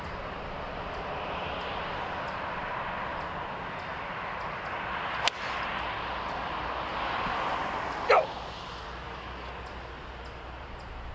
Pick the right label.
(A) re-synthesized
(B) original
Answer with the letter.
B